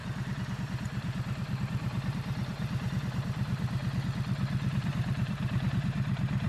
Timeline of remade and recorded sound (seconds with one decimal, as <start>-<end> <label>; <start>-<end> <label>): 0.0-3.8 remade; 3.8-4.7 recorded; 4.7-6.5 remade